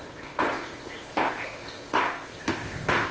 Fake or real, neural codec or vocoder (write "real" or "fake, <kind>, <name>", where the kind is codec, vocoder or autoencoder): fake, codec, ZipCodec